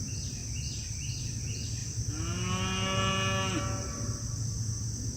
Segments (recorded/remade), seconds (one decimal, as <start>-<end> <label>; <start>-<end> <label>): 0.0-1.8 remade; 1.8-5.2 recorded